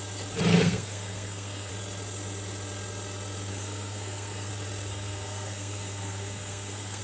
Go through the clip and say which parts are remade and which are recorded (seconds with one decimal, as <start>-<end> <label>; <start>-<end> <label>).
0.0-0.5 recorded; 0.5-1.7 remade; 1.7-3.5 recorded; 3.5-4.5 remade; 4.5-4.9 recorded; 4.9-7.0 remade